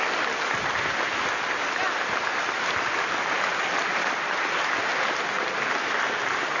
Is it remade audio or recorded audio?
recorded